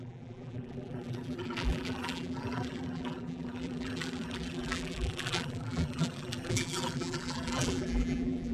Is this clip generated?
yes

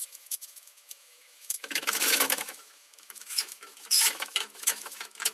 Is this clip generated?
yes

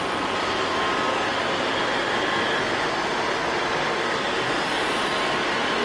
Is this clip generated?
no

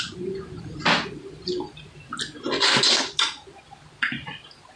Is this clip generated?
no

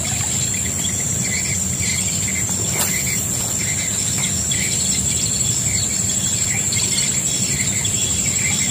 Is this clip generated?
yes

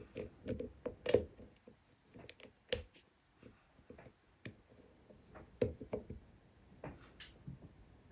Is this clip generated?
no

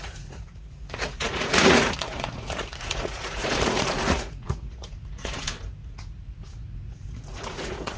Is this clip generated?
yes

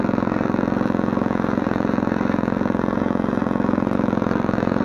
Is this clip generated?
yes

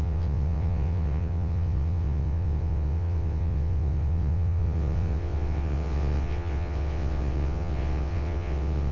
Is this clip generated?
yes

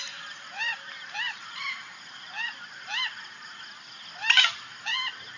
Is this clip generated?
no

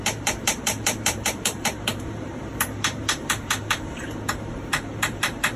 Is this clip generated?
yes